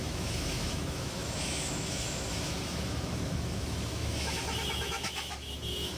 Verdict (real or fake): fake